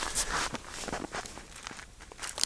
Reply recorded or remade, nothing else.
remade